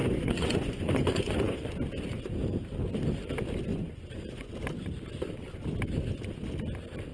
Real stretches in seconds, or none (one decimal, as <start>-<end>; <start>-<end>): 1.7-3.7; 4.5-7.1